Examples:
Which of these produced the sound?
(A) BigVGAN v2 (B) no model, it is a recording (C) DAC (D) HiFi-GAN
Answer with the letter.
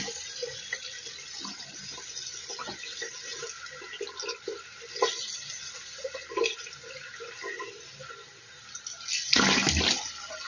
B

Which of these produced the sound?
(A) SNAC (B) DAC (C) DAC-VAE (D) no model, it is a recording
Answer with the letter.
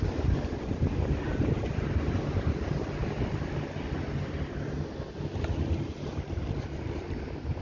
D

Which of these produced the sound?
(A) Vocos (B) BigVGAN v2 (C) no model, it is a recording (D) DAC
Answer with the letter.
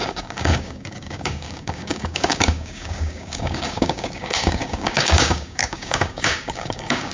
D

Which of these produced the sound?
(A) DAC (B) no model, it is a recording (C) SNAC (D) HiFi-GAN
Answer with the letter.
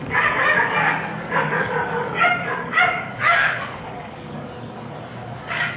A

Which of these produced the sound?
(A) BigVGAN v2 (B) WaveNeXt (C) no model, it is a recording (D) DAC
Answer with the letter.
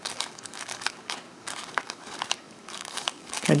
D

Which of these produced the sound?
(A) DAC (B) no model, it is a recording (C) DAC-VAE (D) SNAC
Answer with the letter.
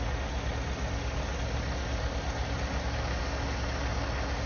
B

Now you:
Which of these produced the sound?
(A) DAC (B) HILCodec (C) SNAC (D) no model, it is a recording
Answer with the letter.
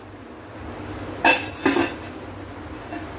D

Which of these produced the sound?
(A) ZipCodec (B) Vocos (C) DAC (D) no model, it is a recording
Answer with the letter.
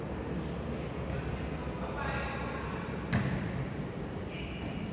D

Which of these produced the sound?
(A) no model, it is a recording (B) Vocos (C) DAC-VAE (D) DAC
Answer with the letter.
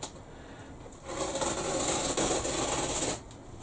A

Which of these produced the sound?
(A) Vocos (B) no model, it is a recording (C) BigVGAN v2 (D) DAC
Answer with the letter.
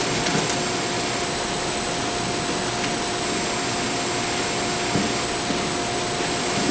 B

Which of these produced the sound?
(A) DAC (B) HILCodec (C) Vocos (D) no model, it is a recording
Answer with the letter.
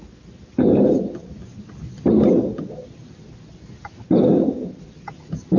D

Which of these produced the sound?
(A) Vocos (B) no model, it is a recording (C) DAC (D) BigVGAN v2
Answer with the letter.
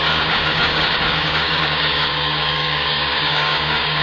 C